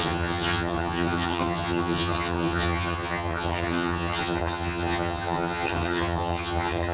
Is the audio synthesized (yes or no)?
yes